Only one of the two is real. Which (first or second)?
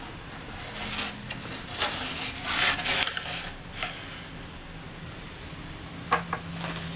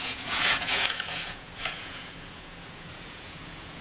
first